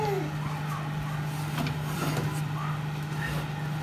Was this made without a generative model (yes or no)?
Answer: yes